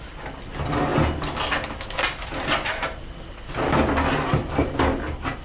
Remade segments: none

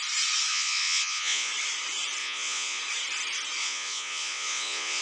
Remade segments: 0.5-1.5 (vocoder, Vocos); 2.2-2.8; 3.6-5.0

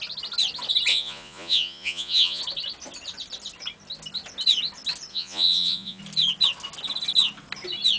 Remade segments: 0.9-2.4 (vocoder, Vocos); 5.1-6.0

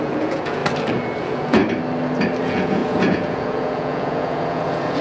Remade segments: 0.0-0.6 (vocoder, Vocos); 1.2-1.6; 2.4-5.0

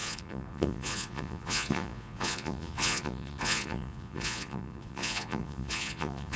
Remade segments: 0.0-6.4 (vocoder, Vocos)

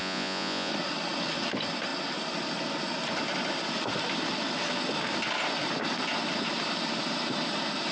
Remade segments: 0.0-0.7 (vocoder, Vocos)